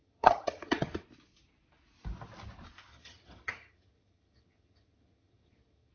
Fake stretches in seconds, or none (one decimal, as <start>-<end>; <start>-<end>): 0.0-1.0; 2.9-5.9